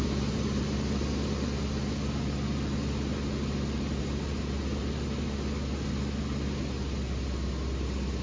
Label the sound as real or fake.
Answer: real